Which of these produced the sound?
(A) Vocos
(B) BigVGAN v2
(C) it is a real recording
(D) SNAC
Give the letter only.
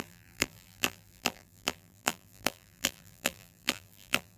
B